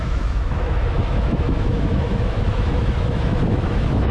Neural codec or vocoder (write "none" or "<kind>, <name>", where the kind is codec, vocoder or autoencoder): autoencoder, DAC-VAE